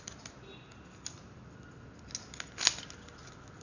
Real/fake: real